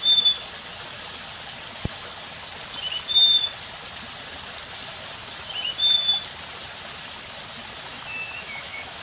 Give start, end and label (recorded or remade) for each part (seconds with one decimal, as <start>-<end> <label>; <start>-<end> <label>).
0.0-7.9 recorded; 7.9-9.0 remade